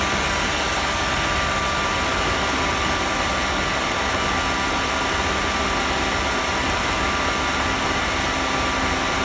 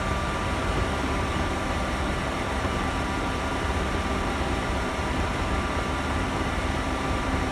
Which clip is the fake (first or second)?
second